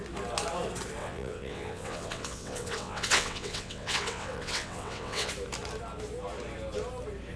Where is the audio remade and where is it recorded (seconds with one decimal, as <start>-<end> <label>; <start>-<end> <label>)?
0.0-1.0 recorded; 1.0-5.3 remade; 5.3-7.4 recorded